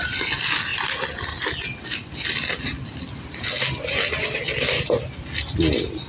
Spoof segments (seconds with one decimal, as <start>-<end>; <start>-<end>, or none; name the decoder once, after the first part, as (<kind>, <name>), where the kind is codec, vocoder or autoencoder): none